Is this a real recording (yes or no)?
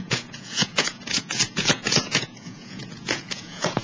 no